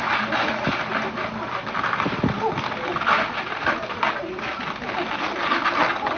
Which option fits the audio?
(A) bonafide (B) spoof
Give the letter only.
A